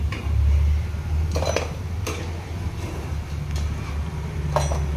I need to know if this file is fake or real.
real